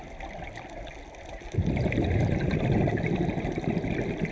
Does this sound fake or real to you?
real